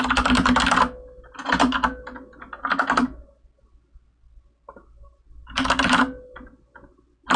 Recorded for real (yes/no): yes